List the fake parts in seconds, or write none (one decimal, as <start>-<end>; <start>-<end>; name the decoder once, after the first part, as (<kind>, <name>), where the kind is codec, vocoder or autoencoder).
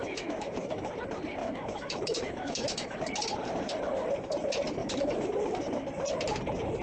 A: 0.0-0.9 (autoencoder, DAC-VAE); 1.4-3.0; 4.8-5.3